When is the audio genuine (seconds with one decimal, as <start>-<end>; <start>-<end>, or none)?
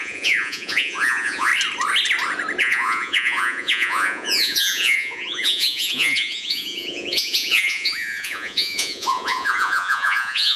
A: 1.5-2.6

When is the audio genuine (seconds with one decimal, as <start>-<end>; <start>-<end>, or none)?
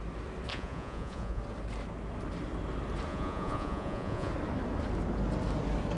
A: 0.0-0.5; 1.4-3.1; 4.3-6.0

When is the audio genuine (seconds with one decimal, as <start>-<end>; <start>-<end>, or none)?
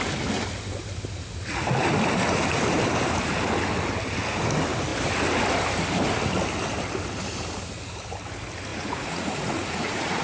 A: 0.0-8.7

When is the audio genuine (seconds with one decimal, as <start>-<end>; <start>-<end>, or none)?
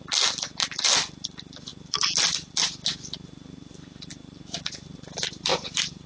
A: 0.0-1.7; 2.5-3.7; 4.2-5.5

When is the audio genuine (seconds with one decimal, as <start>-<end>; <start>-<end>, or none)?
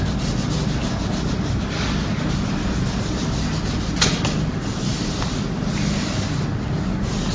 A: 0.0-7.3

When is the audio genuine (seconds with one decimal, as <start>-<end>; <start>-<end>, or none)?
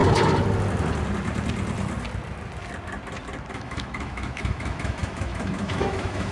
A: 0.0-3.5